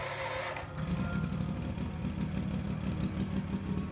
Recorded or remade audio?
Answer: recorded